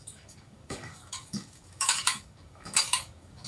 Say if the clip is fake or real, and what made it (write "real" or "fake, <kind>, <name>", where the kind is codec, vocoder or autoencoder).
fake, codec, DAC